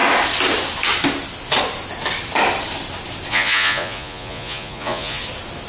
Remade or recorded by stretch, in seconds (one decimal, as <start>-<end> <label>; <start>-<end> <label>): 0.0-3.3 recorded; 3.3-5.2 remade; 5.2-5.7 recorded